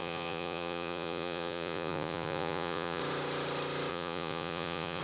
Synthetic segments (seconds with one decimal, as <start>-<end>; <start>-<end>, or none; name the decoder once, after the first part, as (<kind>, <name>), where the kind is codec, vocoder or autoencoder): 0.0-3.0 (vocoder, Vocos); 3.9-5.0

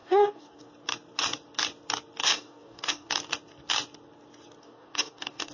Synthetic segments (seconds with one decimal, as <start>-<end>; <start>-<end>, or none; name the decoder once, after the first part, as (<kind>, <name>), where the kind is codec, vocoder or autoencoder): 0.0-0.7 (codec, DAC); 2.2-3.1; 4.6-5.5

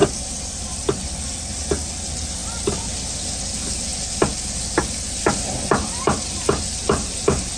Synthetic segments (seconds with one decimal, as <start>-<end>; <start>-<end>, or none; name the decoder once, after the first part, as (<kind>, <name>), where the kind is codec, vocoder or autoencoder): none

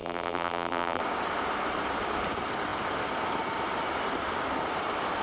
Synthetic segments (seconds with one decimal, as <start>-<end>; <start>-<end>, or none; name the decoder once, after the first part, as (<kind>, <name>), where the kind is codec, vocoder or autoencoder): 0.0-1.0 (vocoder, BigVGAN v2)

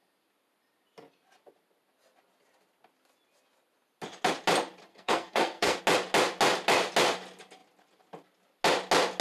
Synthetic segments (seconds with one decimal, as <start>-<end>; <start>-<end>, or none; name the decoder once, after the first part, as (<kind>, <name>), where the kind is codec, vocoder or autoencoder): 4.9-5.8 (codec, SNAC)

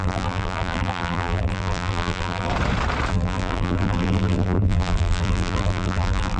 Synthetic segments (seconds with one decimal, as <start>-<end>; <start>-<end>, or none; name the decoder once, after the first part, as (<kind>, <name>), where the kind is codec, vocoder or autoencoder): 0.0-2.5 (vocoder, BigVGAN v2); 3.1-6.4

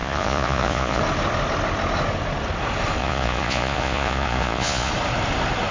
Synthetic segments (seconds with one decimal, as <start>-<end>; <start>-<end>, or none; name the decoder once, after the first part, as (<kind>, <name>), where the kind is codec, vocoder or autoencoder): 0.0-1.0 (vocoder, Vocos); 3.0-4.9

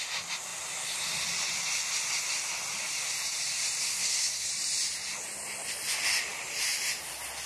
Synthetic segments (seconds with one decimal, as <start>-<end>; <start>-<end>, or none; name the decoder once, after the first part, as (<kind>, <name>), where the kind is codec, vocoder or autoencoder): 3.8-4.5 (codec, SNAC)